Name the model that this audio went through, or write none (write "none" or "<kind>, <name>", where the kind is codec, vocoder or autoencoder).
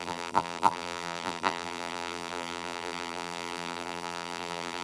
vocoder, BigVGAN v2